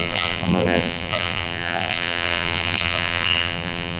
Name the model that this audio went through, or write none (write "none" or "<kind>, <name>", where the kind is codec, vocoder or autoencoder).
vocoder, BigVGAN v2